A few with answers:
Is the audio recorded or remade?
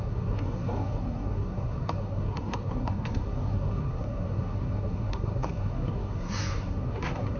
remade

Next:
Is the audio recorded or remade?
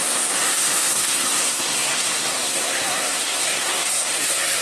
remade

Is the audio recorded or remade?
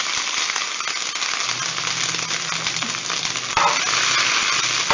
recorded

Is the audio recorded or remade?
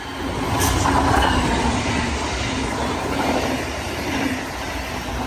recorded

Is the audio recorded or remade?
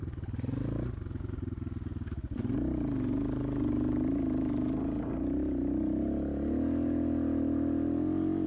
recorded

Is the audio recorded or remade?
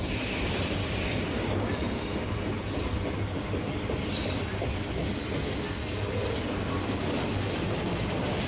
recorded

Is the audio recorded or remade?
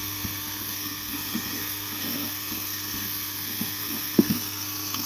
remade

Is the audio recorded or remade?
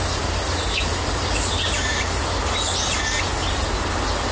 recorded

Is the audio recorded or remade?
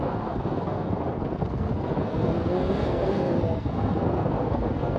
remade